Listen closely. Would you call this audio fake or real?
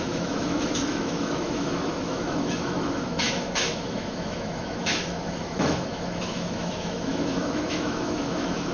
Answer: fake